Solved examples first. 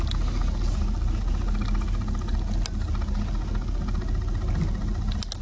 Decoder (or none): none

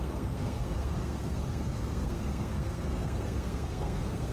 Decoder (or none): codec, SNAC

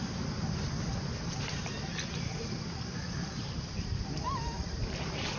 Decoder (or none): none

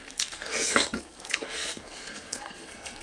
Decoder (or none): codec, SNAC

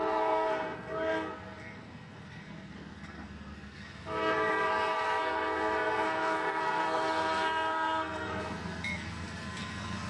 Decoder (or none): codec, SNAC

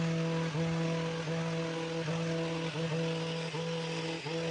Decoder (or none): none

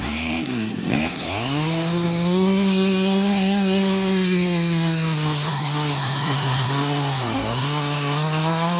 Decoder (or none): codec, SNAC